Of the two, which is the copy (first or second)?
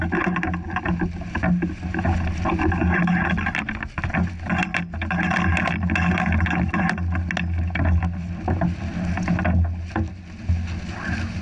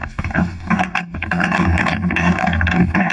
second